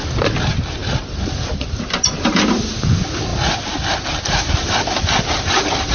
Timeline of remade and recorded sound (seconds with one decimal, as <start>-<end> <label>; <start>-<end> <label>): 0.0-0.8 recorded; 0.8-2.3 remade; 2.3-3.3 recorded; 3.3-5.0 remade; 5.0-5.9 recorded